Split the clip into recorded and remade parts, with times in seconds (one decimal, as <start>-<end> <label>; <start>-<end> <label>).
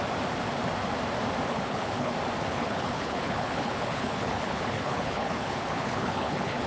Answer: 0.0-1.5 recorded; 1.5-2.1 remade; 2.1-2.5 recorded; 2.5-6.7 remade